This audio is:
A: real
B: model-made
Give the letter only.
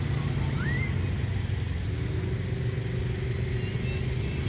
A